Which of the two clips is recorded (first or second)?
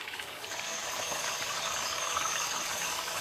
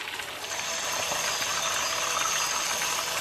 second